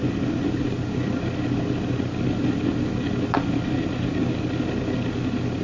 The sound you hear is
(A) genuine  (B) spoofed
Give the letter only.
A